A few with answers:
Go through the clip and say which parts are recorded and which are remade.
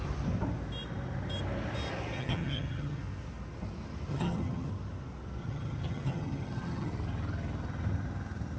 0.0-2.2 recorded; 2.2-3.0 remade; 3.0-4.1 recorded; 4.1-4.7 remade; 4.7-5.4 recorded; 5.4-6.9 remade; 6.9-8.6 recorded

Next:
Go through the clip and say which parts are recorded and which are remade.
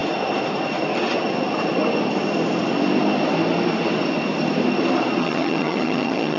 0.0-5.2 recorded; 5.2-6.4 remade